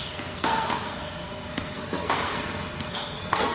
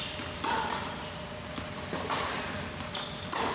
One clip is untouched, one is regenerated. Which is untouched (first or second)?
second